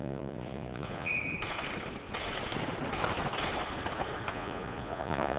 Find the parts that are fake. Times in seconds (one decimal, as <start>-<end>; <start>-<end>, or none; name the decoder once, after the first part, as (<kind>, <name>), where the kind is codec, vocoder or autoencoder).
0.0-1.1 (vocoder, Vocos); 4.3-5.4